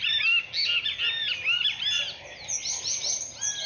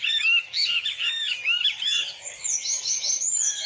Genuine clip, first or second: first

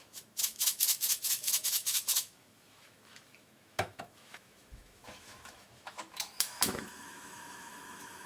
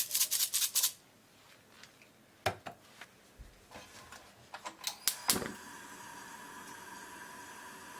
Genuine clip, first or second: second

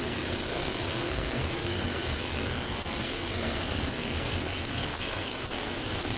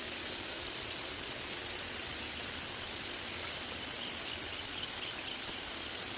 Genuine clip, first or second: second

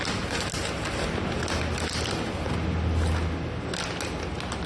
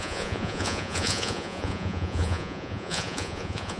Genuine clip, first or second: first